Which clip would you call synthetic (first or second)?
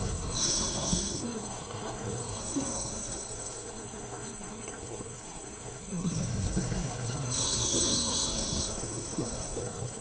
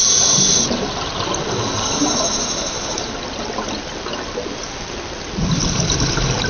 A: first